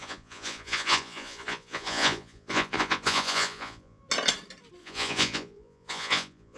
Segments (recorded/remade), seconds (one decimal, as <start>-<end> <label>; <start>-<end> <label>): 0.0-4.0 remade; 4.0-4.8 recorded; 4.8-6.6 remade